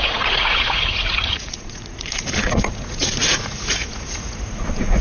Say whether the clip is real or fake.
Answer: fake